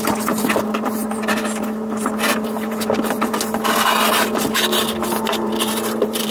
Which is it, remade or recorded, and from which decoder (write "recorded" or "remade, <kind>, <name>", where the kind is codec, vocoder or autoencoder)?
recorded